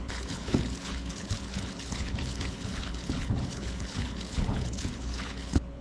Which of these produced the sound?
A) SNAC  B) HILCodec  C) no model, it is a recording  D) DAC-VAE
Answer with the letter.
B